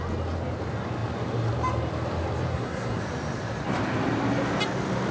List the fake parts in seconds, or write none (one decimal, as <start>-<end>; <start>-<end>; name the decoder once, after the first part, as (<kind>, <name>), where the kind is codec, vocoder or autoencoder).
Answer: 2.5-3.0 (codec, SNAC)